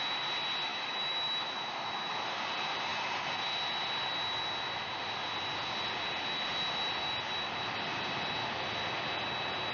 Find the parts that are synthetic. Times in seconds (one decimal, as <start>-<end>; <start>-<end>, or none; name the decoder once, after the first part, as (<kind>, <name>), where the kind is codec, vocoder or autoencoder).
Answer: 0.7-2.1 (autoencoder, DAC-VAE)